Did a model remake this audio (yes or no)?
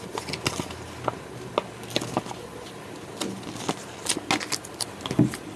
no